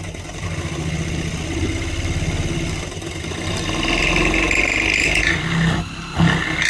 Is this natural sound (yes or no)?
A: yes